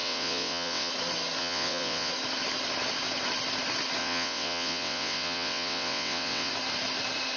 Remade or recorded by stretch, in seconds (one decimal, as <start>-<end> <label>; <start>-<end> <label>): 0.0-0.9 remade; 0.9-1.4 recorded; 1.4-2.1 remade; 2.1-4.0 recorded; 4.0-6.5 remade; 6.5-7.4 recorded